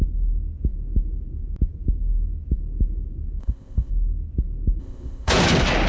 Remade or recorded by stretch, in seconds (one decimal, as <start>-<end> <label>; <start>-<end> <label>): 0.0-3.4 recorded; 3.4-3.9 remade; 3.9-4.8 recorded; 4.8-5.3 remade; 5.3-5.9 recorded